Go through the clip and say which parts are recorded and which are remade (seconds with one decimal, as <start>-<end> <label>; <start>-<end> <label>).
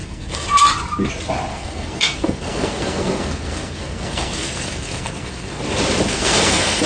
0.0-0.6 remade; 0.6-1.5 recorded; 1.5-5.6 remade; 5.6-6.1 recorded; 6.1-6.9 remade